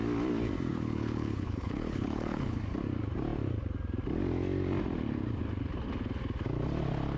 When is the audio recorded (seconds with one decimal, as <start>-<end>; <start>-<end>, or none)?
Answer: 0.0-0.7; 2.6-7.2